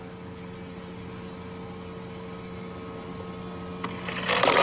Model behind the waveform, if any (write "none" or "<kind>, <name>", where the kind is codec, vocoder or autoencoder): none